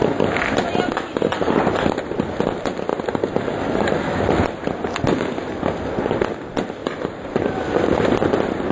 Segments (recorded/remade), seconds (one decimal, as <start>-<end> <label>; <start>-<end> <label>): 0.0-6.8 recorded; 6.8-7.3 remade; 7.3-8.7 recorded